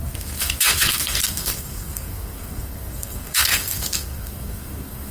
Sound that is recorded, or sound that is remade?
remade